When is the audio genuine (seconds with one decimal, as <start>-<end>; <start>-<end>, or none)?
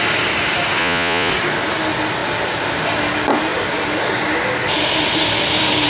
0.0-0.8; 1.3-5.9